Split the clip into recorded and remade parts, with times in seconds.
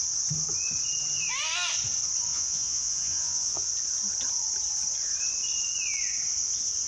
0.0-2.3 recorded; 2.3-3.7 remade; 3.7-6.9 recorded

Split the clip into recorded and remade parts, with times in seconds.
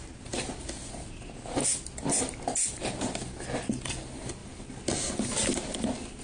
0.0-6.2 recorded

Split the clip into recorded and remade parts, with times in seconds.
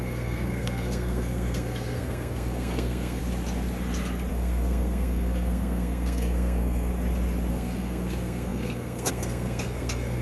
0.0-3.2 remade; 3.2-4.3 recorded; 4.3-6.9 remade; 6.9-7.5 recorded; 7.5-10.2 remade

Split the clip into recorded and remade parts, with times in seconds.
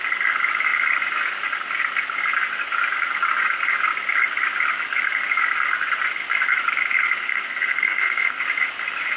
0.0-7.2 recorded; 7.2-8.4 remade; 8.4-9.2 recorded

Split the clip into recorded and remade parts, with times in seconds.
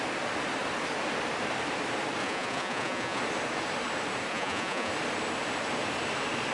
0.0-2.2 recorded; 2.2-3.2 remade; 3.2-4.3 recorded; 4.3-4.9 remade; 4.9-6.5 recorded